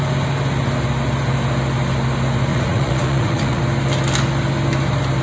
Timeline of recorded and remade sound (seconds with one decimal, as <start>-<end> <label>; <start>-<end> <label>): 0.0-2.5 recorded; 2.5-3.6 remade; 3.6-5.2 recorded